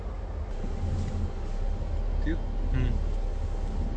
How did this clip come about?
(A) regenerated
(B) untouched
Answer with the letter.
B